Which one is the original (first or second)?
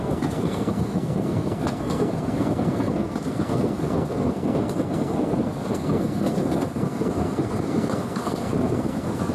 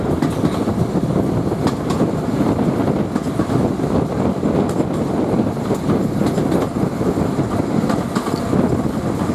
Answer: second